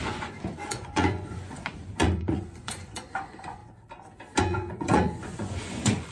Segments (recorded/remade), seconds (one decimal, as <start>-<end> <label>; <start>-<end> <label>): 0.0-3.6 remade; 3.6-4.4 recorded; 4.4-6.1 remade